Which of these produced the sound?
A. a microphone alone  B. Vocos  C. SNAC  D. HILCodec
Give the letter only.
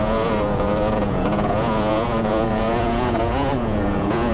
B